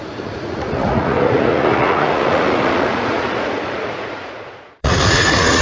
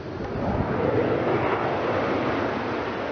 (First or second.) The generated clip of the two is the first